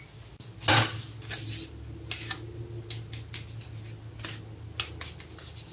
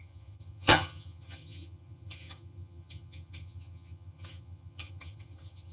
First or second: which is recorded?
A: first